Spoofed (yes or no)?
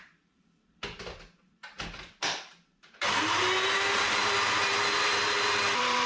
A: yes